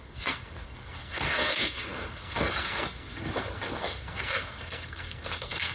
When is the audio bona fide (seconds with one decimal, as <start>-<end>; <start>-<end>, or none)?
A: none